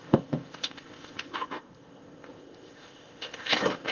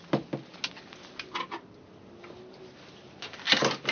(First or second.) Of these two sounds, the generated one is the first